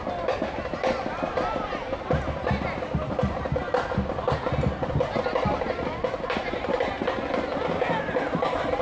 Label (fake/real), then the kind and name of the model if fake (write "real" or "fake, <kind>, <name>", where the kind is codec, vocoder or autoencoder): real